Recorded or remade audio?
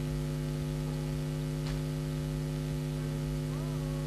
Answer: recorded